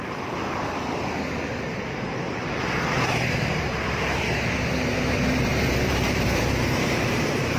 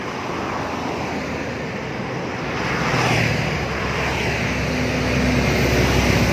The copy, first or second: first